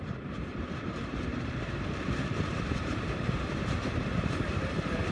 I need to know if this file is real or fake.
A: fake